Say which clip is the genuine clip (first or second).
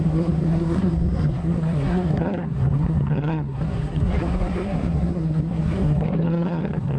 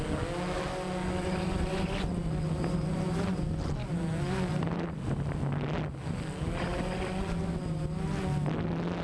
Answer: second